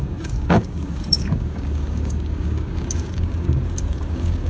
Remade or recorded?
remade